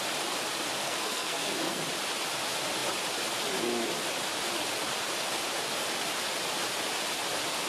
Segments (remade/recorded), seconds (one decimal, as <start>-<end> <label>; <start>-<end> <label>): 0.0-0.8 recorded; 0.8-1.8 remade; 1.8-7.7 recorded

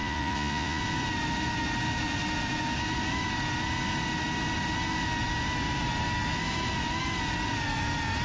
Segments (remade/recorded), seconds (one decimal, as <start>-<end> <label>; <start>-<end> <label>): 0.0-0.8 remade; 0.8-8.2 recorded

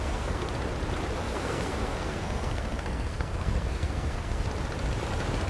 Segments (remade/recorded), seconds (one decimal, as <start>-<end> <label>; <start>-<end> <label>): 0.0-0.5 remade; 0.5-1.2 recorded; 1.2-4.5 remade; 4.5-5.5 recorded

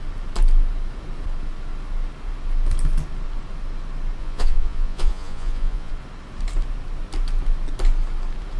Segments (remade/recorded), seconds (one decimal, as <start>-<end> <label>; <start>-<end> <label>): 0.0-4.2 recorded; 4.2-5.9 remade; 5.9-8.6 recorded

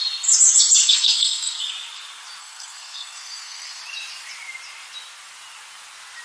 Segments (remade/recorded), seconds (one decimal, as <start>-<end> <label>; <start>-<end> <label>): 0.0-0.8 recorded; 0.8-1.6 remade; 1.6-2.4 recorded; 2.4-3.8 remade; 3.8-6.2 recorded

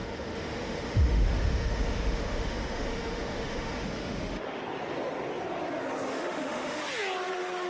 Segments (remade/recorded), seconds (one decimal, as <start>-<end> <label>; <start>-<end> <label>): 0.0-4.6 remade; 4.6-6.1 recorded; 6.1-6.8 remade; 6.8-7.7 recorded